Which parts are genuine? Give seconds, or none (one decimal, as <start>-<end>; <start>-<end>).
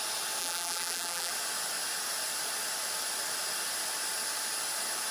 0.0-0.4; 1.3-5.1